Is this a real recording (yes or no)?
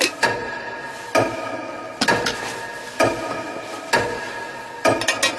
yes